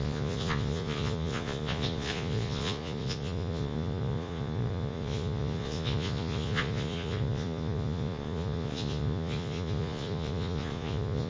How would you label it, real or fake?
fake